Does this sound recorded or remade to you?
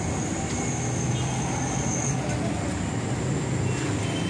recorded